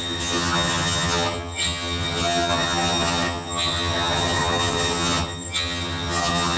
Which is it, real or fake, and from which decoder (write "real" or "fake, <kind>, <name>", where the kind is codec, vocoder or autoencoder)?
fake, vocoder, HiFi-GAN